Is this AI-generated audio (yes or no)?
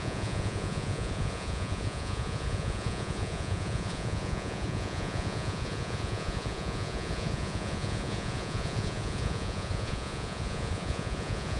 yes